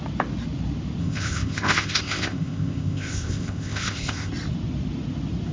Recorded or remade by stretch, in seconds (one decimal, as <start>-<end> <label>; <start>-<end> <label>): 0.0-1.0 recorded; 1.0-4.3 remade; 4.3-5.5 recorded